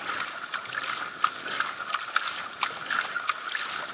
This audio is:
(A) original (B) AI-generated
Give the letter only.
A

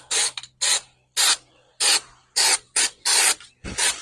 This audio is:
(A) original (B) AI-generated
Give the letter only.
A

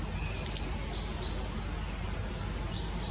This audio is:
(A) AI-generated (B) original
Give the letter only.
B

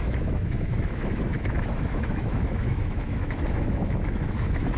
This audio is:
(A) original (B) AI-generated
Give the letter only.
B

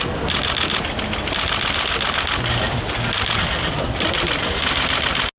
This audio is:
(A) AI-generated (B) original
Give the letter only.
B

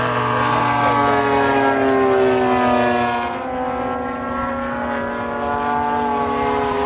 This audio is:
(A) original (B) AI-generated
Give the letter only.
A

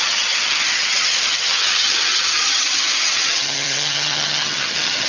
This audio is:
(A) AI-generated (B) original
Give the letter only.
A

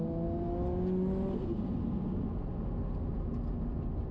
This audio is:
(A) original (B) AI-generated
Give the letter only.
A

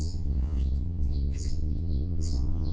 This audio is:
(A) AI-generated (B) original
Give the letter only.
A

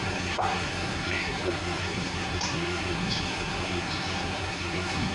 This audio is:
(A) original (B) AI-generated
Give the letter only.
B